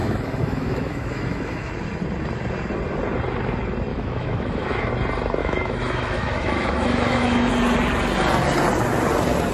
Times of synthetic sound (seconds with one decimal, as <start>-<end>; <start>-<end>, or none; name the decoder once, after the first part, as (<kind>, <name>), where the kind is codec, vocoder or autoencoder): 0.0-1.7 (autoencoder, DAC-VAE); 3.9-4.9; 5.4-7.5